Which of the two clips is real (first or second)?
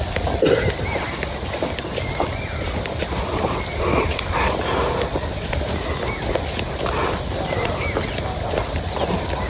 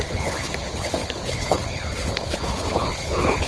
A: first